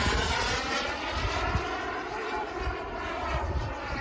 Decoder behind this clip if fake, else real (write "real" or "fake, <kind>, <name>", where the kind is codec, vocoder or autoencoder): real